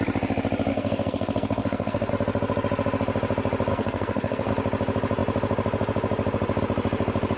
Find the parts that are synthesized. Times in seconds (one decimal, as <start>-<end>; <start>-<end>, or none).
0.7-2.1; 3.7-4.5